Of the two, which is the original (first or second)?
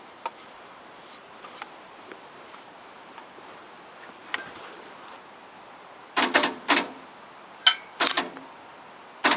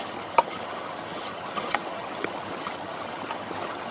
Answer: first